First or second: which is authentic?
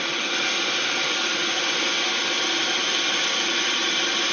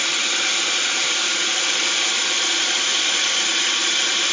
first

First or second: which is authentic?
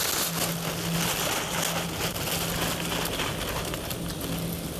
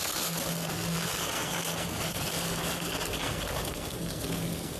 first